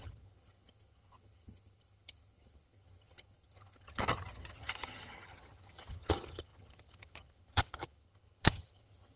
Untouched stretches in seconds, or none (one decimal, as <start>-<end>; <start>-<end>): none